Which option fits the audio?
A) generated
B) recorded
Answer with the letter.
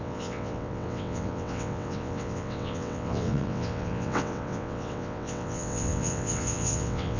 A